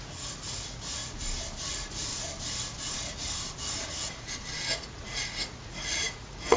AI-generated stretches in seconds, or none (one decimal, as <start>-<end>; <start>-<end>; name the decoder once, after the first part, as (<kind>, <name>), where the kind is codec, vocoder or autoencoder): 0.0-1.0 (vocoder, Vocos); 1.7-2.1; 4.7-6.6